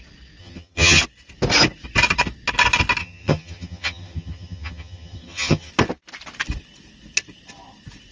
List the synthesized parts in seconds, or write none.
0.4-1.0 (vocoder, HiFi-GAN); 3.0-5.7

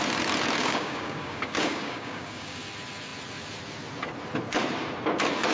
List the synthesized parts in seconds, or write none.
0.6-2.6 (codec, DAC)

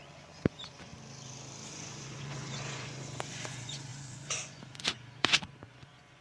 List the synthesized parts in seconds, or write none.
0.0-0.9 (vocoder, Vocos); 1.7-6.2

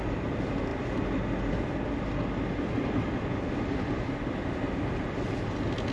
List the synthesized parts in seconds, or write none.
none

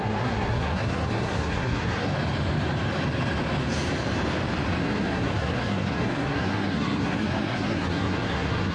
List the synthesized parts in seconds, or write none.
0.0-2.1 (codec, SNAC); 4.8-8.7

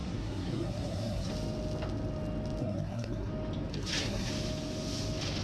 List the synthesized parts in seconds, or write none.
0.0-1.3 (codec, SNAC); 2.6-3.3; 3.7-4.3

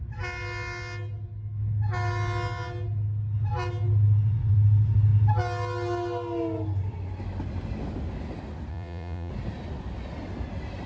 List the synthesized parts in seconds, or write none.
8.7-9.3 (vocoder, Vocos)

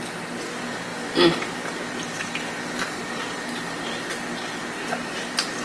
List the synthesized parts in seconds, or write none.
0.9-4.1 (vocoder, BigVGAN v2)